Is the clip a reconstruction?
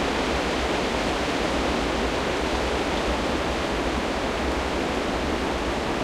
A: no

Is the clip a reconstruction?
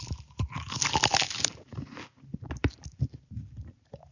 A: yes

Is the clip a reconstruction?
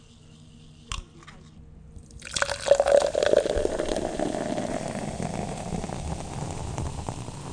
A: no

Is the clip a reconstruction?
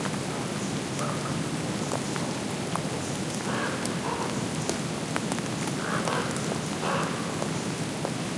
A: no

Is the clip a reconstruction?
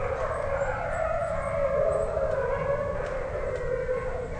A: no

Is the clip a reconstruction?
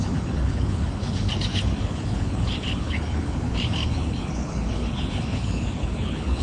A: yes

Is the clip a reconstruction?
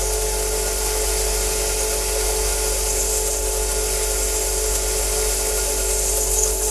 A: no